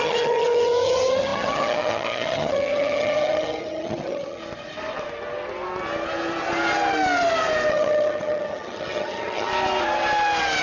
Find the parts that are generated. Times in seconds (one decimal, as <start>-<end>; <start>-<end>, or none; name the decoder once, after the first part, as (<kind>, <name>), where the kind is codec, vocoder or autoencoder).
0.0-4.4 (vocoder, HiFi-GAN); 7.7-9.5